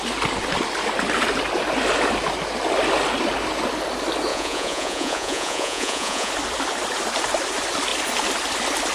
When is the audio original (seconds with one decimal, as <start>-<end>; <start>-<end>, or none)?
0.0-4.3; 6.3-8.9